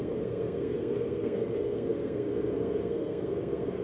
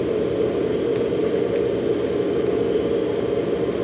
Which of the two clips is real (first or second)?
second